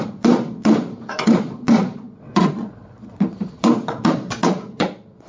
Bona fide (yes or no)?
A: no